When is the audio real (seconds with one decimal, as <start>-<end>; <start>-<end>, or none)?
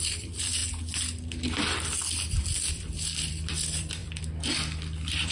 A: 0.6-2.7